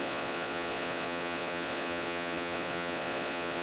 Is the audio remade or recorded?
remade